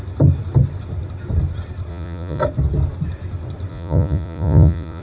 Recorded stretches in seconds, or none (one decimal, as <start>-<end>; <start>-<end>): 0.0-1.9; 2.4-3.7

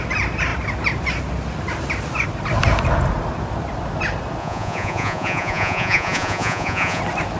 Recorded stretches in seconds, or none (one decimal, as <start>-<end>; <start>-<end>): 0.0-4.4; 7.0-7.4

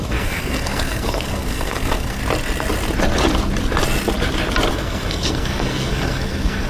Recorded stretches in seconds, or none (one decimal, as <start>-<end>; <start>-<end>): 2.2-4.7

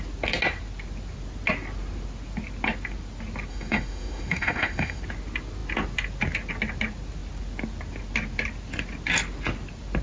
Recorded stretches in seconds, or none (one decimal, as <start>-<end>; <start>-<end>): 0.0-3.5; 5.0-10.0